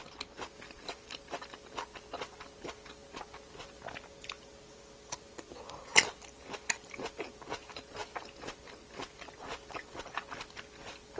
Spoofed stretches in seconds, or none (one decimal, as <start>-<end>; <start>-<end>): none